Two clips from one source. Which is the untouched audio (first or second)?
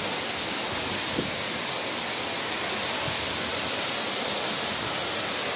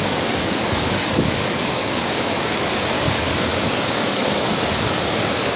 first